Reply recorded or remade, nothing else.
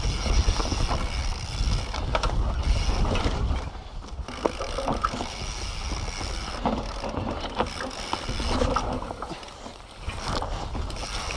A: recorded